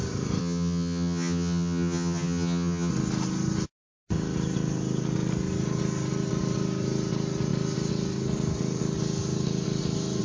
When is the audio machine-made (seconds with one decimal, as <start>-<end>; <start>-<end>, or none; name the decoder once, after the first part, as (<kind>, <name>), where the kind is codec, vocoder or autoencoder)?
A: 0.4-2.9 (vocoder, HiFi-GAN)